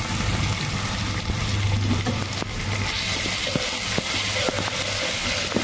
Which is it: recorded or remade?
recorded